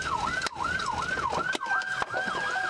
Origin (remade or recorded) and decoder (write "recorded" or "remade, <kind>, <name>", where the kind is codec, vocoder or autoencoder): recorded